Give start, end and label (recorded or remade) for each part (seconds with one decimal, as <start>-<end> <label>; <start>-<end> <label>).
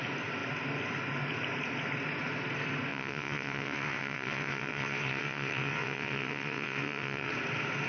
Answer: 0.0-2.9 recorded; 2.9-7.3 remade; 7.3-7.9 recorded